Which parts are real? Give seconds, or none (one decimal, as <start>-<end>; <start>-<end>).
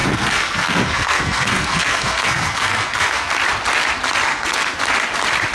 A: 3.3-4.3; 4.8-5.5